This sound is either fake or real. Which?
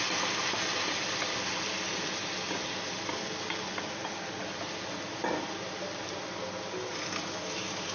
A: real